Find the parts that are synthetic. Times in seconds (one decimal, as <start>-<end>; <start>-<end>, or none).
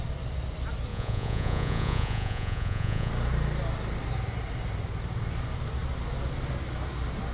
0.9-3.1